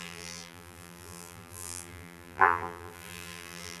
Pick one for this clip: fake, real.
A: fake